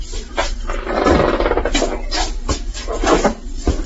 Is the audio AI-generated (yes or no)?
no